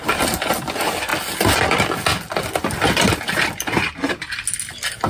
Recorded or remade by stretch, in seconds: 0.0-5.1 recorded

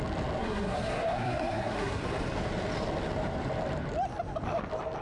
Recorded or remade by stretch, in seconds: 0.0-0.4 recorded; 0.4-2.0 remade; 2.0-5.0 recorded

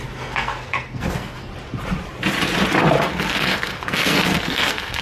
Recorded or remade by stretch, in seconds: 0.0-1.5 remade; 1.5-3.0 recorded; 3.0-5.0 remade

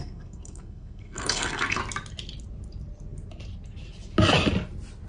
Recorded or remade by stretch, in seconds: 0.0-1.8 remade; 1.8-5.1 recorded